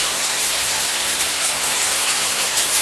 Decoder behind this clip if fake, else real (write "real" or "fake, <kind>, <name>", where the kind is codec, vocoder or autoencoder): fake, codec, SNAC